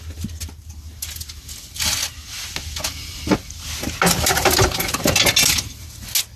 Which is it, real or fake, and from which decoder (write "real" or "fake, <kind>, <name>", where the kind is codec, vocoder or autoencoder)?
real